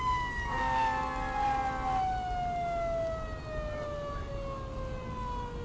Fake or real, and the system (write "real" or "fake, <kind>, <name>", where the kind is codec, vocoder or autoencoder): real